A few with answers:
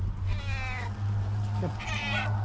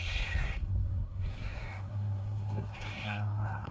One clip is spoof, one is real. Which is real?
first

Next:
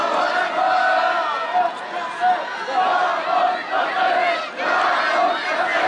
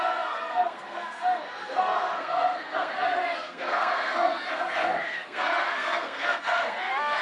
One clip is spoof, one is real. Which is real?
first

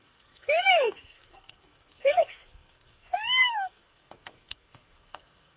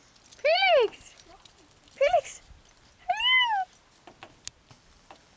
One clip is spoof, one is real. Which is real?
second